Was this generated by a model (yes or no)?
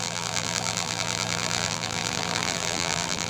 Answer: yes